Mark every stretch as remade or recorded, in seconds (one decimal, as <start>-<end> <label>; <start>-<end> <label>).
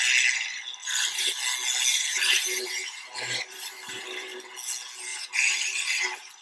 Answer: 0.0-0.8 recorded; 0.8-1.4 remade; 1.4-1.9 recorded; 1.9-4.5 remade; 4.5-5.1 recorded; 5.1-6.4 remade